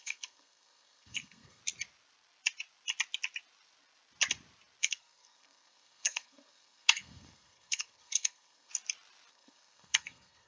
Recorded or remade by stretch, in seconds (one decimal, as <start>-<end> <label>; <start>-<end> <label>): 0.0-1.6 remade; 1.6-4.8 recorded; 4.8-8.7 remade; 8.7-9.3 recorded; 9.3-10.5 remade